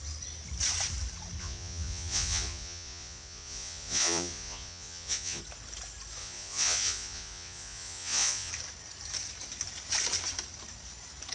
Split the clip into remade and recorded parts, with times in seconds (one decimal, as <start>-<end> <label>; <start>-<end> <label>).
0.0-1.4 recorded; 1.4-5.4 remade; 5.4-6.2 recorded; 6.2-8.5 remade; 8.5-11.3 recorded

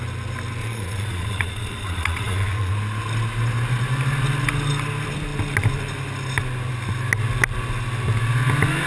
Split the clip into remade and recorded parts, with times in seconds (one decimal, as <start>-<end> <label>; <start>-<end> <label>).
0.0-0.6 recorded; 0.6-2.7 remade; 2.7-8.9 recorded

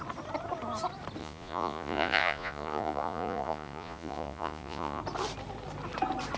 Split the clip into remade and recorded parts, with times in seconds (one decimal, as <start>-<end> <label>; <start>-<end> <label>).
0.0-1.2 recorded; 1.2-5.0 remade; 5.0-6.4 recorded

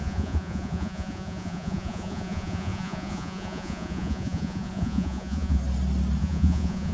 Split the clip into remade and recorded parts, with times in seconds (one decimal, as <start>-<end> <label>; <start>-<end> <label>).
0.0-5.6 remade; 5.6-6.2 recorded; 6.2-6.9 remade